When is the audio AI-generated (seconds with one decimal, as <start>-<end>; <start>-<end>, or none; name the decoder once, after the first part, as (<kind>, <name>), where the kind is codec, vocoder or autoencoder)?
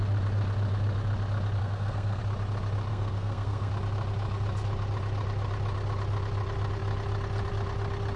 1.6-2.2 (codec, SNAC); 2.9-3.7